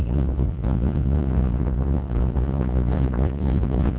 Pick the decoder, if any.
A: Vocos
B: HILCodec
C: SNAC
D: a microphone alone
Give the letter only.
A